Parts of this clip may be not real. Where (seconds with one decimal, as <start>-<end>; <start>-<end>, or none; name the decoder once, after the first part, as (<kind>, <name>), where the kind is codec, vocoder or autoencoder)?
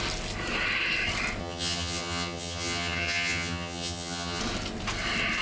1.4-4.4 (vocoder, HiFi-GAN)